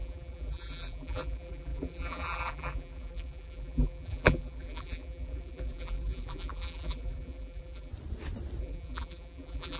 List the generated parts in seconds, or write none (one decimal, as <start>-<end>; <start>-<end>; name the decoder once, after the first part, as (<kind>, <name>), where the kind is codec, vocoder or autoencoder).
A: 0.0-7.9 (vocoder, BigVGAN v2); 8.6-9.8